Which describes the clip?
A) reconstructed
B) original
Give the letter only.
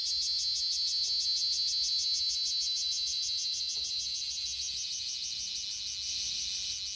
B